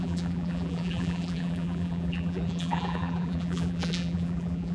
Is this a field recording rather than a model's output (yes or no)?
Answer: no